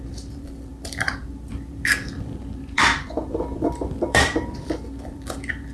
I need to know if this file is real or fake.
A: fake